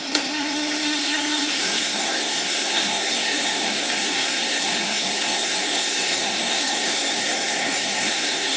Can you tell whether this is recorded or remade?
remade